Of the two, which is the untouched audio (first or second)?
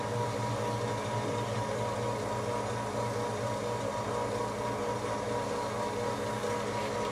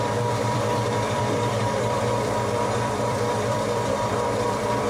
first